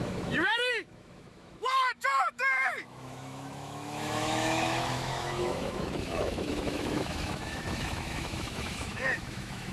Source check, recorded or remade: remade